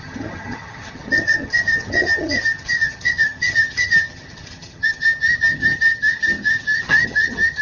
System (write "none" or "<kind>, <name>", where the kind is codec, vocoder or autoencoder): vocoder, HiFi-GAN